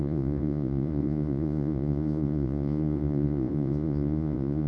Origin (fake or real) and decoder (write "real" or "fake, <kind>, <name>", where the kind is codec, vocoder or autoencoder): fake, vocoder, Vocos